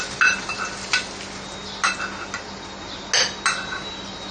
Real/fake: real